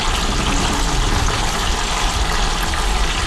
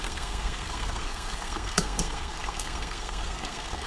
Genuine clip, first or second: first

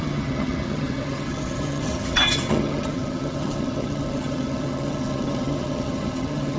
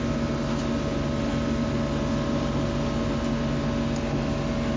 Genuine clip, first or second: second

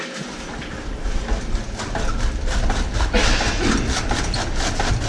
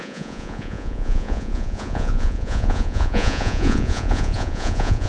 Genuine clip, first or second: first